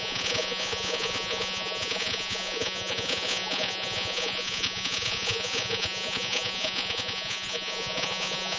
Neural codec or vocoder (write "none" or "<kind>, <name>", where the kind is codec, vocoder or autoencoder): vocoder, Vocos